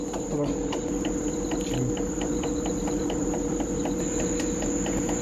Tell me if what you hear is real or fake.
real